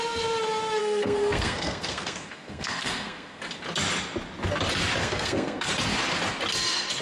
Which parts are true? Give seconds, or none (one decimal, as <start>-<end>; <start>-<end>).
0.0-0.8; 3.4-5.0; 5.7-7.0